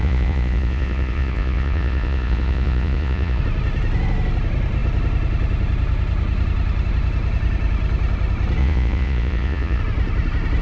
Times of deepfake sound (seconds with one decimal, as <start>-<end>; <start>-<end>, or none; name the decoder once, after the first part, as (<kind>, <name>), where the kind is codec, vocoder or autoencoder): 0.0-3.4 (vocoder, Vocos); 8.6-9.8